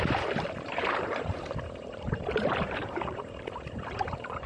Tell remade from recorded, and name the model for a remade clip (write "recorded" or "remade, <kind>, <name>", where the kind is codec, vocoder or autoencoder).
remade, vocoder, BigVGAN v2